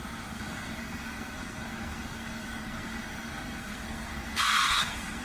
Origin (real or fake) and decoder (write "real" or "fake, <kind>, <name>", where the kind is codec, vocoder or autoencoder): fake, codec, SNAC